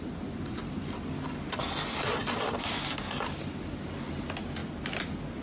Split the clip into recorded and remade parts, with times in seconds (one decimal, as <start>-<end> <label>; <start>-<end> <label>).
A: 0.0-5.4 recorded